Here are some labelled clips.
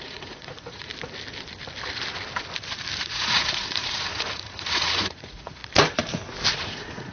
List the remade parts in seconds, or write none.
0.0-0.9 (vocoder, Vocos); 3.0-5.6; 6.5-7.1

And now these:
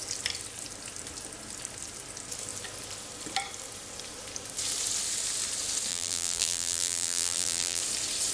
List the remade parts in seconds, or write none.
5.9-7.8 (vocoder, BigVGAN v2)

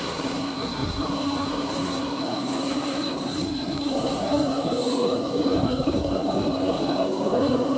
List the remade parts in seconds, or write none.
0.0-7.8 (codec, SNAC)

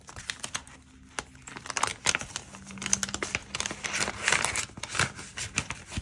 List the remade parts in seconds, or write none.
none

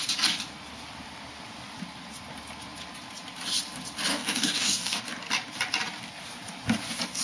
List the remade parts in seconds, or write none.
4.1-5.0 (codec, DAC)

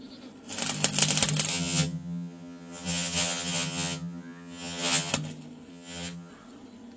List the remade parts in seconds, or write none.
1.5-5.1 (vocoder, HiFi-GAN); 5.7-6.3

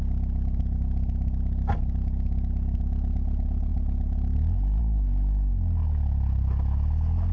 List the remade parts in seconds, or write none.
none

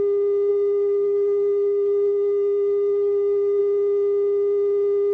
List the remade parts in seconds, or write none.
0.5-3.6 (codec, SNAC)